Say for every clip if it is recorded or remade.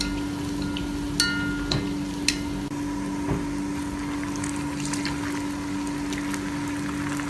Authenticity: recorded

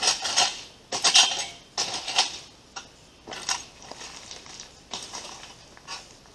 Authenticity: recorded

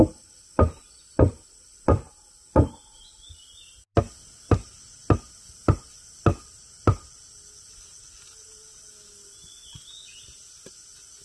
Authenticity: recorded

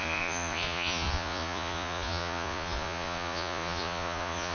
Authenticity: remade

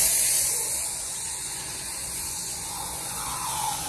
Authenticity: remade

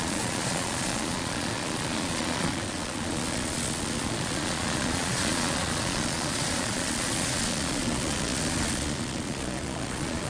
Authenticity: remade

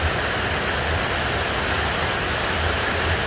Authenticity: recorded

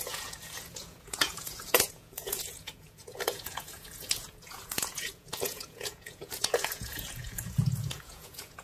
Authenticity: remade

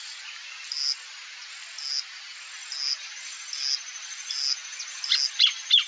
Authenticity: recorded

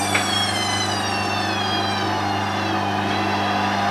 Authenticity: recorded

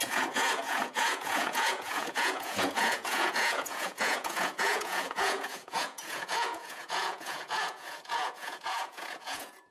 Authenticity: remade